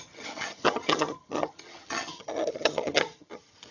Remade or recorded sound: remade